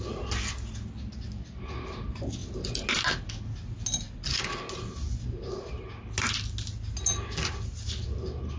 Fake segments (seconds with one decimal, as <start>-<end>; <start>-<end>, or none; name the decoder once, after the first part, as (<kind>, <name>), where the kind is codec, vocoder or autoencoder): none